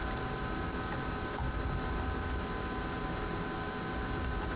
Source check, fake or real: real